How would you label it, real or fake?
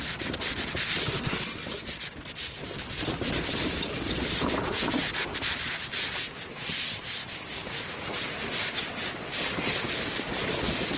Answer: real